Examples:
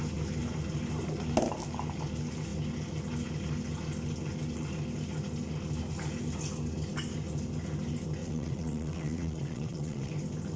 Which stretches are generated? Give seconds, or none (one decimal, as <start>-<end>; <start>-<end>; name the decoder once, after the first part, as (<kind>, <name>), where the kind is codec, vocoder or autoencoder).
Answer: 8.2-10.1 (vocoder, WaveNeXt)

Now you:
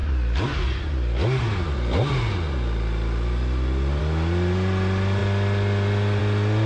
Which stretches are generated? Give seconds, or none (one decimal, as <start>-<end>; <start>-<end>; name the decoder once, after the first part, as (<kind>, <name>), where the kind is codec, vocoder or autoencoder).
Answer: none

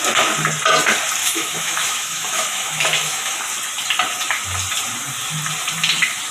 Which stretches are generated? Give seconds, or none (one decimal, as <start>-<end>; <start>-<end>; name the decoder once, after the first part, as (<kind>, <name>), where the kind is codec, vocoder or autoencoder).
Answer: 1.2-3.4 (autoencoder, DAC-VAE)

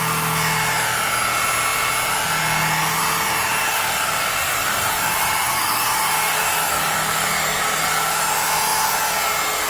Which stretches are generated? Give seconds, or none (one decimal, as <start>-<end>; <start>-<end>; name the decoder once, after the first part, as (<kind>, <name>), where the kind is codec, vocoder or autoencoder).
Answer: 3.6-8.1 (codec, DAC)

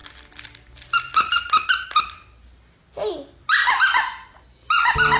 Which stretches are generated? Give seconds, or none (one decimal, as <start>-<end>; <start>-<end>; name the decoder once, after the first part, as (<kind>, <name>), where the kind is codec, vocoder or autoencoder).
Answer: none

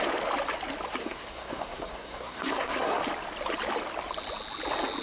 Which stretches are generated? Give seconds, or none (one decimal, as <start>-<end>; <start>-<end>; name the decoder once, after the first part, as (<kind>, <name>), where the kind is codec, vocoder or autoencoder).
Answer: 1.0-3.0 (codec, SNAC)